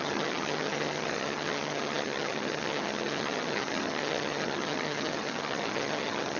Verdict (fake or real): fake